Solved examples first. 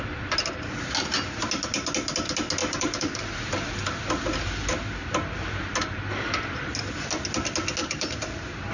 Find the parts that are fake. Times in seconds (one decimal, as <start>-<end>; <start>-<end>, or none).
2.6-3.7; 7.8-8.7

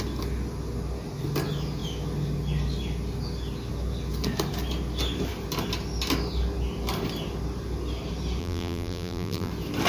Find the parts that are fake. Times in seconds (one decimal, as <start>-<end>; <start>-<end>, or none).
8.4-9.5

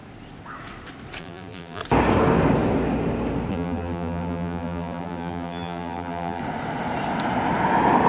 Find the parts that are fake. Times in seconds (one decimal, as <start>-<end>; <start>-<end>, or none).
1.2-1.8; 3.5-6.4